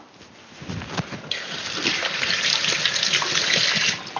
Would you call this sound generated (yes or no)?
no